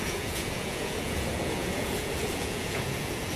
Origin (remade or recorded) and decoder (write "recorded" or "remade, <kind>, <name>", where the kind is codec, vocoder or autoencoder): remade, vocoder, Vocos